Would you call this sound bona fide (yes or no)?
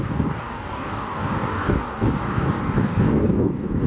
no